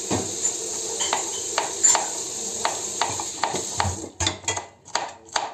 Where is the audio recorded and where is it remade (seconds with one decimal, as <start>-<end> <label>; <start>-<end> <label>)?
0.0-5.5 recorded